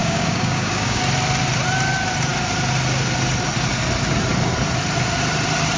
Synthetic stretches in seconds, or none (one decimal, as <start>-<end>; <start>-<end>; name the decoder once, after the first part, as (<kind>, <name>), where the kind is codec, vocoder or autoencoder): 0.0-1.0 (codec, DAC)